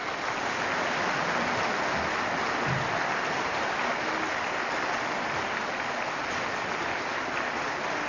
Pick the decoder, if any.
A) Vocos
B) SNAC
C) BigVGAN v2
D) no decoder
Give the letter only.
D